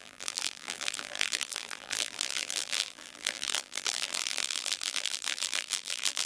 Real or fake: fake